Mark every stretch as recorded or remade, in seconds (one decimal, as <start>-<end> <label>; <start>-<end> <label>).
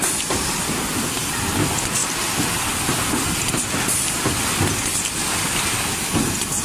0.0-6.6 recorded